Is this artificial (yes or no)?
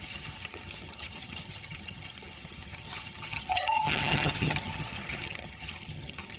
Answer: yes